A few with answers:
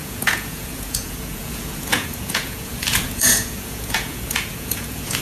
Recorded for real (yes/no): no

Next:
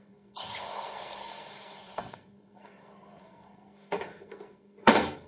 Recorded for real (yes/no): no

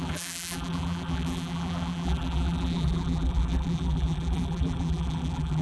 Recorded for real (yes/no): no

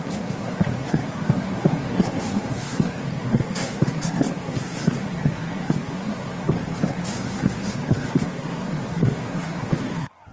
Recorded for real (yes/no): no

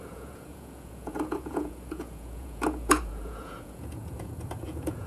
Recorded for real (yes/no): no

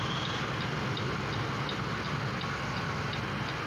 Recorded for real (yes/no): yes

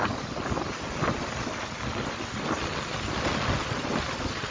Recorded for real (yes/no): yes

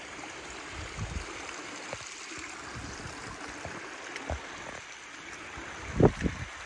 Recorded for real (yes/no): yes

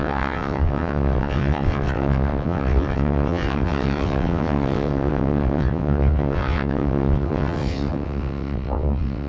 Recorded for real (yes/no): no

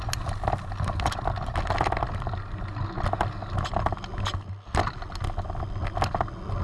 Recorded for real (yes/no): yes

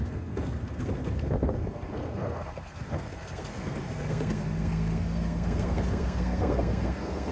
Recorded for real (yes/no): no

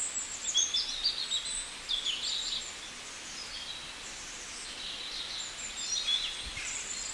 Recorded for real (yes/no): yes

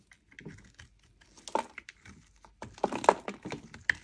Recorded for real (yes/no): yes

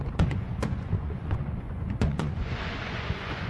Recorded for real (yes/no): no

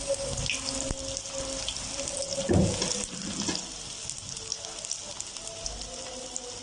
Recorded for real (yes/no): yes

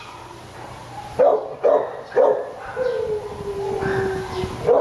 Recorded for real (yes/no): yes